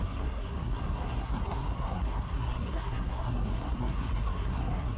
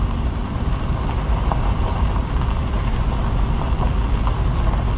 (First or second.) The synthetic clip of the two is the first